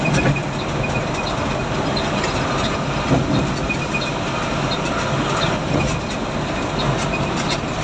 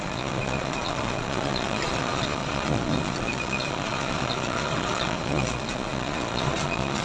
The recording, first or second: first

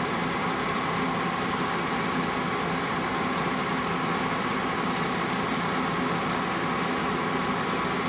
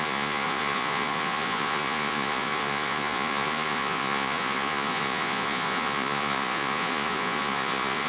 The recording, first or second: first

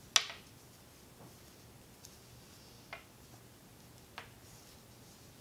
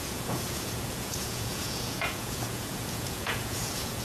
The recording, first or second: first